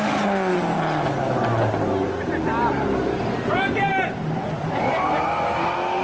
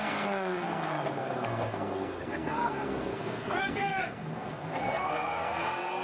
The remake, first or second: second